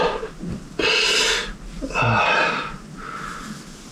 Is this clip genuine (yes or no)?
yes